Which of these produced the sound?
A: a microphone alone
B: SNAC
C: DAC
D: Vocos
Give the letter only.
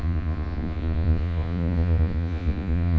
D